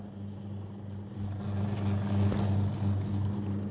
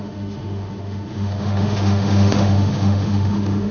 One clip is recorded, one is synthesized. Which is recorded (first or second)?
first